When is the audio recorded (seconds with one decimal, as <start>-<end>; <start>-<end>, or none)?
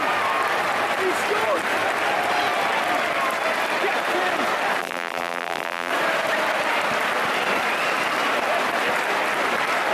0.0-4.8; 5.9-9.9